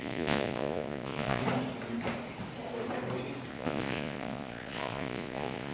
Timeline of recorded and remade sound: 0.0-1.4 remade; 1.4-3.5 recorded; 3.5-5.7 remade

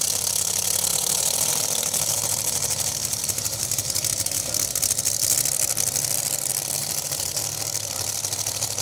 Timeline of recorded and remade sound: 0.0-0.9 recorded; 0.9-4.8 remade; 4.8-6.8 recorded; 6.8-7.4 remade; 7.4-8.8 recorded

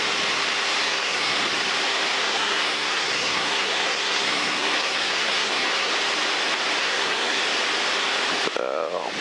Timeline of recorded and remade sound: 0.0-0.8 recorded; 0.8-1.4 remade; 1.4-2.2 recorded; 2.2-5.9 remade; 5.9-6.8 recorded; 6.8-7.4 remade; 7.4-9.2 recorded

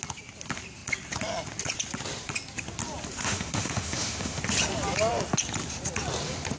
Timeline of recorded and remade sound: 0.0-3.2 recorded; 3.2-4.4 remade; 4.4-6.6 recorded

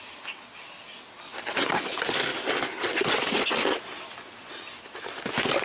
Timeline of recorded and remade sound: 0.0-5.6 recorded

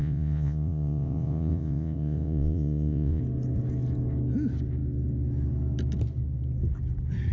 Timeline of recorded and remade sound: 0.0-3.2 remade; 3.2-7.3 recorded

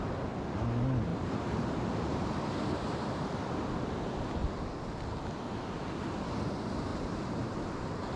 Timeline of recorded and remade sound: 0.0-1.1 recorded; 1.1-3.3 remade; 3.3-6.9 recorded; 6.9-7.5 remade; 7.5-8.2 recorded

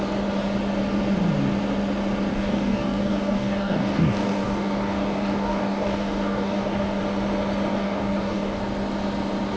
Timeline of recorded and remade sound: 0.0-2.3 recorded; 2.3-7.0 remade; 7.0-7.7 recorded; 7.7-8.6 remade; 8.6-9.6 recorded